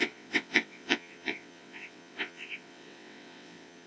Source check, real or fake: fake